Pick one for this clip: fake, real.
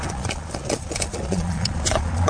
fake